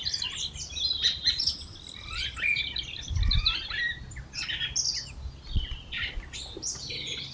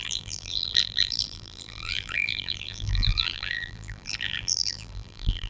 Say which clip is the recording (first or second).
first